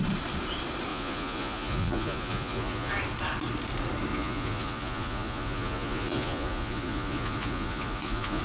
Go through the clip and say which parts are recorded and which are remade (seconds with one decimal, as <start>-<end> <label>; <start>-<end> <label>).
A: 0.0-0.9 recorded; 0.9-2.9 remade; 2.9-4.1 recorded; 4.1-8.4 remade